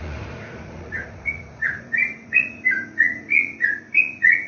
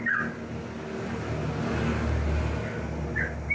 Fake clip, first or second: first